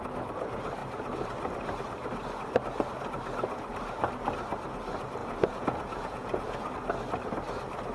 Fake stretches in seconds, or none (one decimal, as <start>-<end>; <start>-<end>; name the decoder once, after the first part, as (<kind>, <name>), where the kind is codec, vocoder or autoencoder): 5.2-6.7 (vocoder, Vocos)